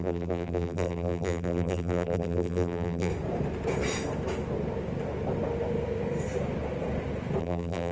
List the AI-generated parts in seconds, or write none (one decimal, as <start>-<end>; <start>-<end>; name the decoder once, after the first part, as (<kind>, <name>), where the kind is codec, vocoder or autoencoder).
0.0-3.1 (vocoder, BigVGAN v2); 7.4-7.9